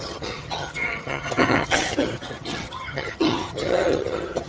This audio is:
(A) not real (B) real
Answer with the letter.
A